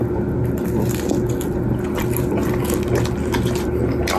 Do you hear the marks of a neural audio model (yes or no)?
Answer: no